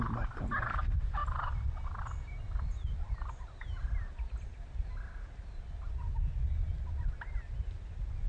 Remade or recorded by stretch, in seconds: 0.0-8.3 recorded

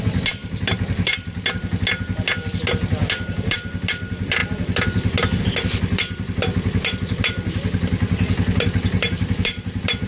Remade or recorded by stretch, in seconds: 0.0-10.1 recorded

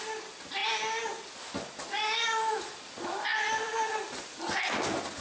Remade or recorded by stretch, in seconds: 0.0-5.2 recorded

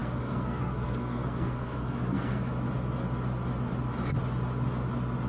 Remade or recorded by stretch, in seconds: 0.0-2.5 remade; 2.5-5.3 recorded

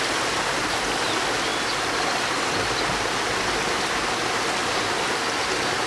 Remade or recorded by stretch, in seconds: 0.0-5.9 recorded

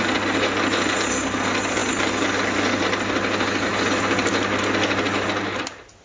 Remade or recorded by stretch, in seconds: 0.0-6.0 recorded

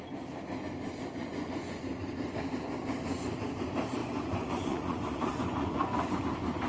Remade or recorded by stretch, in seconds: 0.0-1.2 recorded; 1.2-1.8 remade; 1.8-4.0 recorded; 4.0-6.2 remade; 6.2-6.7 recorded